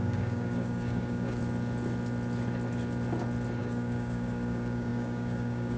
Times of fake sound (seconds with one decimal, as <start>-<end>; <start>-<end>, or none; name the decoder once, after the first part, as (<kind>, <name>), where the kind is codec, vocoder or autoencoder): 0.0-1.4 (codec, DAC); 3.6-5.8